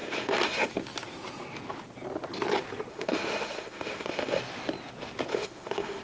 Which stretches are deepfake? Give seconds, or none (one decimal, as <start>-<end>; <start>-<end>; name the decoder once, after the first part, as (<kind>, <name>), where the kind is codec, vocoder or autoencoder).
0.0-0.7 (autoencoder, DAC-VAE); 2.9-4.4; 5.3-6.0